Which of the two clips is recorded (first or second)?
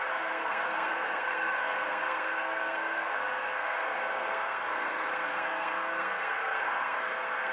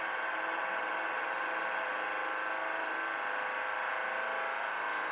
second